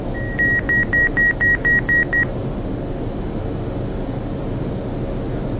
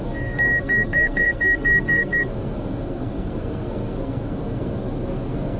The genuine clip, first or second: first